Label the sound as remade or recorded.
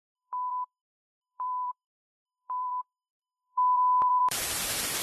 remade